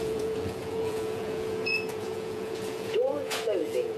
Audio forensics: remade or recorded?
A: remade